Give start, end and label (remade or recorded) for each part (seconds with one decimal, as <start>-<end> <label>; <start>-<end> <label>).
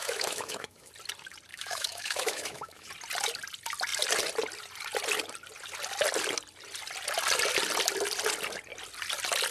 0.0-0.9 remade; 0.9-1.5 recorded; 1.5-2.9 remade; 2.9-9.5 recorded